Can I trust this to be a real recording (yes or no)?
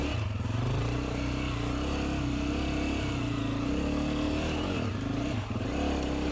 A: yes